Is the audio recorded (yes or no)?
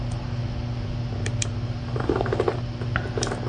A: yes